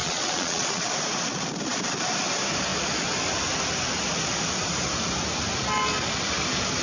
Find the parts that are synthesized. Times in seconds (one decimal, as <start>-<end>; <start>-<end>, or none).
0.0-0.9